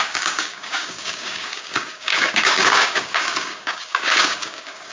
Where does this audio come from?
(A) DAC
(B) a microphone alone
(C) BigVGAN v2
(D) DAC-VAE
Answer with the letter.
A